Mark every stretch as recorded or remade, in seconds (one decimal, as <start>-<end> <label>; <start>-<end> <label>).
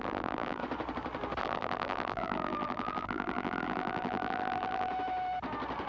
0.0-0.6 remade; 0.6-1.4 recorded; 1.4-4.9 remade; 4.9-5.9 recorded